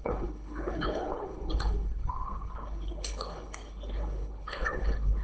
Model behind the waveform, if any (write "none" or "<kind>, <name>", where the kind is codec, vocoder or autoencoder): codec, HILCodec